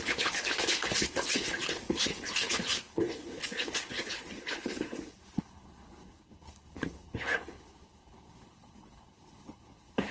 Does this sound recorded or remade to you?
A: remade